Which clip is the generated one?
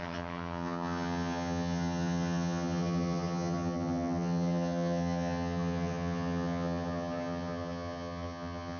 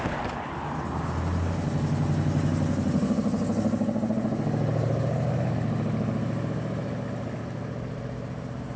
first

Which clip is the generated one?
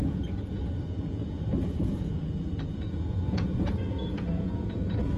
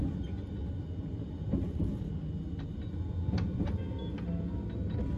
first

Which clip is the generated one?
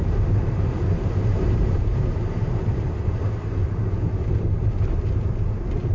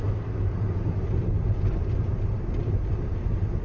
first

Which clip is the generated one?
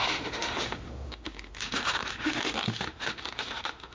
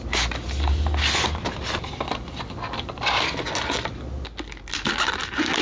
first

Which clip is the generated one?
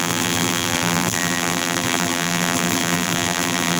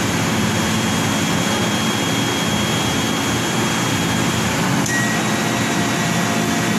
first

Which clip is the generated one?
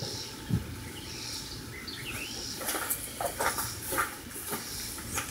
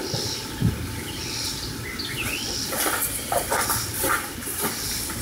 second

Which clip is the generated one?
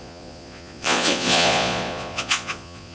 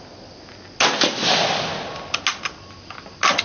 first